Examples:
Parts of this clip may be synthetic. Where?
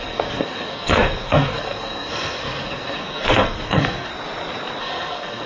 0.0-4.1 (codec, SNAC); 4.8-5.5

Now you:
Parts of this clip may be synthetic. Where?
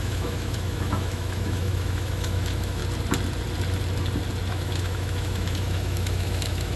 0.0-2.8 (autoencoder, DAC-VAE); 4.5-6.8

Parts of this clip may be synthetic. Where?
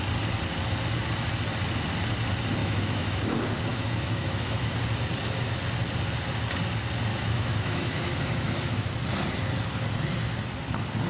2.6-3.2 (autoencoder, DAC-VAE); 3.7-4.7; 7.1-8.9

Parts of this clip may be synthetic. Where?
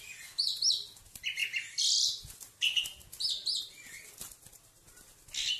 none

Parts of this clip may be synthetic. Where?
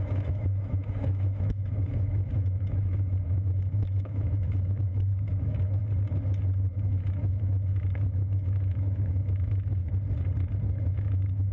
0.0-5.8 (autoencoder, DAC-VAE); 6.7-9.8; 10.8-11.5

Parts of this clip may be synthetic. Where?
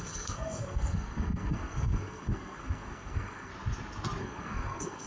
0.0-3.5 (codec, SNAC); 4.2-5.1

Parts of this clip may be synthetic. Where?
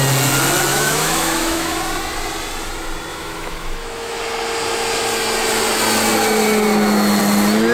0.7-1.8 (autoencoder, DAC-VAE); 3.1-4.2